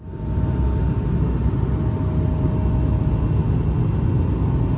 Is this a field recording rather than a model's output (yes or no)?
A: yes